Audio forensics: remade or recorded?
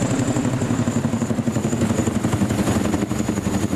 recorded